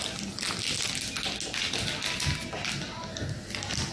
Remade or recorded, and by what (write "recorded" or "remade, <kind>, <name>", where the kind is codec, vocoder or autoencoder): recorded